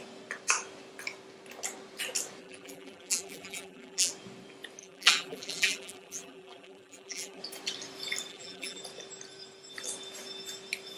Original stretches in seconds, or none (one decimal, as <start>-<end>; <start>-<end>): 0.0-2.4; 4.1-4.8; 7.4-8.3; 8.8-11.0